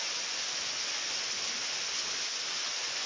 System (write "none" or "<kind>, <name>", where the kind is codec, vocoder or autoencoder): vocoder, Vocos